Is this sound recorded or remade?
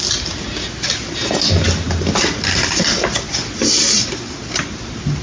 recorded